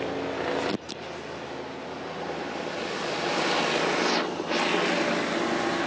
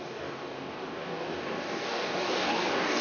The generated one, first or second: second